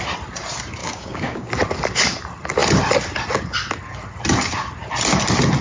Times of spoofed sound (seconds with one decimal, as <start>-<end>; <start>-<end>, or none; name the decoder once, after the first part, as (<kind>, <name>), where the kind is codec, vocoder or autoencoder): 0.8-1.5 (codec, DAC)

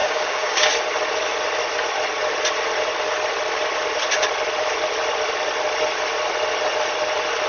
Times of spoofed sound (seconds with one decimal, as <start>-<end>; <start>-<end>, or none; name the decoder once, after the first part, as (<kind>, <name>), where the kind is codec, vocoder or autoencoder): 0.0-0.7 (codec, DAC)

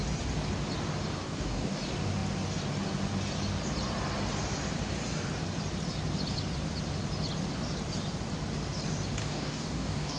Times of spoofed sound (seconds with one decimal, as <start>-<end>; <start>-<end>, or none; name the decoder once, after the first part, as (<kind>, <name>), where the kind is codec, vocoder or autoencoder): 1.2-1.8 (codec, DAC); 9.2-10.2

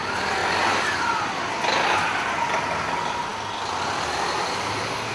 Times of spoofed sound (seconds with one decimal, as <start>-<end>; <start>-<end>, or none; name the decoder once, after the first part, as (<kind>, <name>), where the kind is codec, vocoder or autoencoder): none

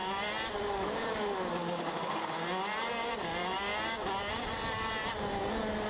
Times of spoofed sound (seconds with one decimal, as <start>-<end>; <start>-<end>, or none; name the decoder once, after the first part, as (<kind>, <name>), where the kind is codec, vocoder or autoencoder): 1.6-2.4 (codec, DAC)

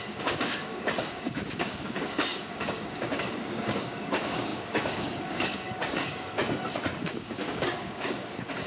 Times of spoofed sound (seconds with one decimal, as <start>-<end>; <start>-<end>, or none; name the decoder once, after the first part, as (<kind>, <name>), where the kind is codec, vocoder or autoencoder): 0.0-6.4 (codec, DAC); 7.0-8.7